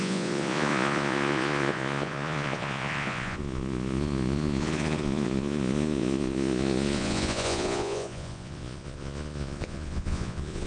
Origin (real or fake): fake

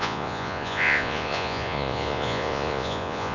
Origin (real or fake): fake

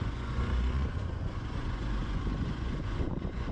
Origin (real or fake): fake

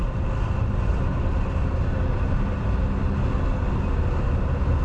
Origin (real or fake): real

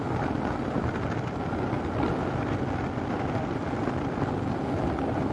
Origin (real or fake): real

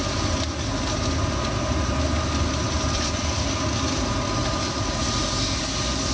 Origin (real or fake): real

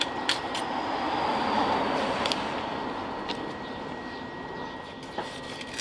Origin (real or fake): real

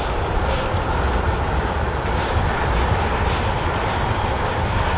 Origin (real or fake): real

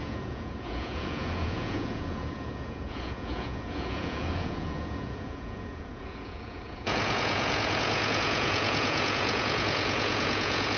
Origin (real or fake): fake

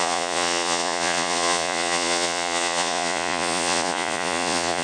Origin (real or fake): fake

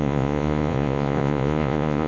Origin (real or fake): fake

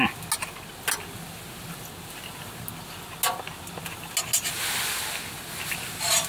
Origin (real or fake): real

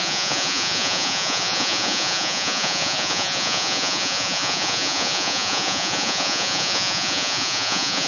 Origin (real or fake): fake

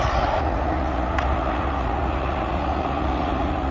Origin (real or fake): fake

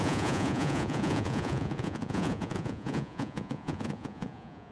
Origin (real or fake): fake